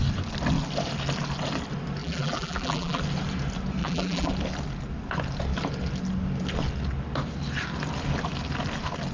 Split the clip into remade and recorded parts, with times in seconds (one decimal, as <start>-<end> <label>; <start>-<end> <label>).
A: 0.0-2.0 recorded; 2.0-3.0 remade; 3.0-3.8 recorded; 3.8-4.3 remade; 4.3-9.1 recorded